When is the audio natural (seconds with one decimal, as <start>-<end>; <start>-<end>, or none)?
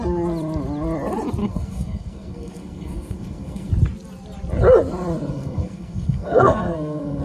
0.0-1.4; 3.7-5.3